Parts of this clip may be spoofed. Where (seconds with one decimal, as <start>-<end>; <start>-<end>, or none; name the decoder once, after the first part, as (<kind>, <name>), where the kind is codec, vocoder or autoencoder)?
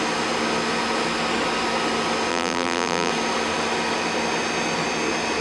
2.3-3.1 (vocoder, BigVGAN v2)